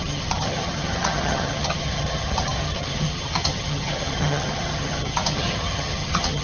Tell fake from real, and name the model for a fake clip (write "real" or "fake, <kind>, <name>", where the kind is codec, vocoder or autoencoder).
fake, vocoder, HiFi-GAN